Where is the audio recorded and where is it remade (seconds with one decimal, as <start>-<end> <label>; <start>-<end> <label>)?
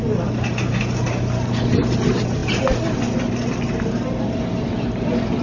0.0-5.4 recorded